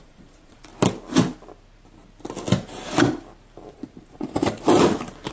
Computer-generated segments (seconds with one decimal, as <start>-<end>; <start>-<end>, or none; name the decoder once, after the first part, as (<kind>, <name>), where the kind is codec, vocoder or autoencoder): 0.0-0.7 (vocoder, Vocos); 3.7-4.6